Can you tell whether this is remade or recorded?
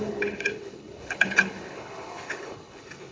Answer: remade